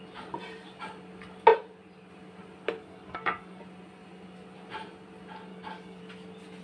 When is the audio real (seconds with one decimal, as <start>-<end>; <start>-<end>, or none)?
0.0-2.8; 3.6-5.5; 6.0-6.6